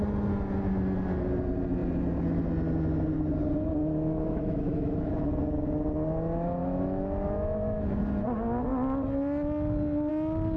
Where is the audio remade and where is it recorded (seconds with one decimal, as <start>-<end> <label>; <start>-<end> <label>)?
0.0-3.8 recorded; 3.8-5.3 remade; 5.3-6.6 recorded; 6.6-8.0 remade; 8.0-10.6 recorded